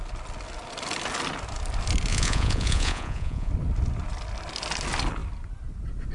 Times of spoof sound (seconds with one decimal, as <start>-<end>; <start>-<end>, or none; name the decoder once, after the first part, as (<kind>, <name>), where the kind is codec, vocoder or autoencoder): 2.1-3.5 (vocoder, Vocos)